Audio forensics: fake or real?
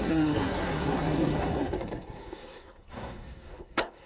fake